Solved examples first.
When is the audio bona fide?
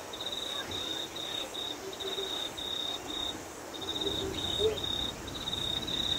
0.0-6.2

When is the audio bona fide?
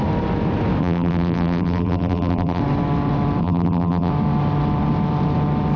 0.0-0.8; 2.6-3.4; 4.1-5.8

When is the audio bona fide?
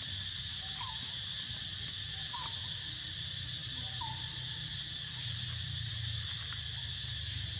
0.0-3.6; 5.9-7.6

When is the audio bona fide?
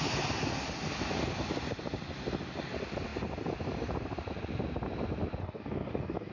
0.0-5.4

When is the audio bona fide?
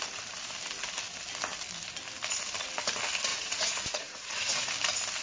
0.0-3.3; 4.7-5.2